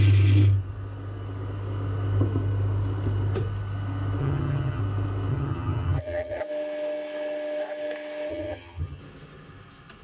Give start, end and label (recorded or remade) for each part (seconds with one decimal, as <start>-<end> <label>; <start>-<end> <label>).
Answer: 0.0-4.2 recorded; 4.2-4.8 remade; 4.8-5.3 recorded; 5.3-6.4 remade; 6.4-8.3 recorded; 8.3-9.0 remade; 9.0-10.0 recorded